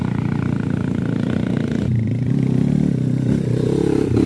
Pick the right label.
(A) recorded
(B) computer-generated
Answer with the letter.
A